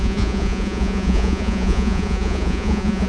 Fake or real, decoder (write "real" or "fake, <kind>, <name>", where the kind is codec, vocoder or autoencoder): fake, vocoder, Vocos